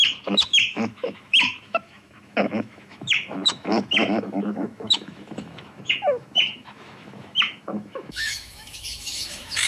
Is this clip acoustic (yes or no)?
no